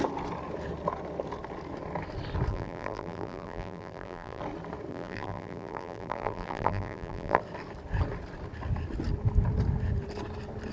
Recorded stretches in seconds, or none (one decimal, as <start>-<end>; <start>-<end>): 0.0-2.5; 4.4-4.9; 7.4-10.7